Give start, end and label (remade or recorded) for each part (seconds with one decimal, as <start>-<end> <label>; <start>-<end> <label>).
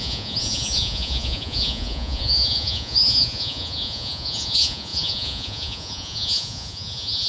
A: 0.0-7.3 remade